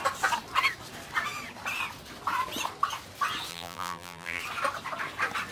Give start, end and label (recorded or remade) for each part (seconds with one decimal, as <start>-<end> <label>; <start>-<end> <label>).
0.0-3.5 recorded; 3.5-4.4 remade; 4.4-5.5 recorded